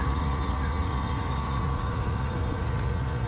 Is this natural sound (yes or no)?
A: no